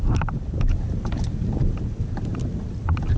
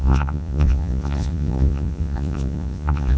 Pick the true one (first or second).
first